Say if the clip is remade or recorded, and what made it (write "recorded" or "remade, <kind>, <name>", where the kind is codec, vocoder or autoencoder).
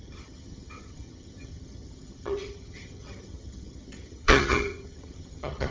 remade, vocoder, HiFi-GAN